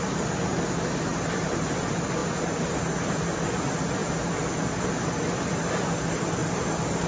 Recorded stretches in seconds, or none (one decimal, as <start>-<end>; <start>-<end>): 0.0-1.1; 1.8-6.4